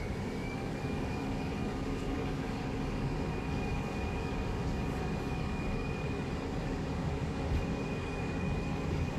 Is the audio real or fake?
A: fake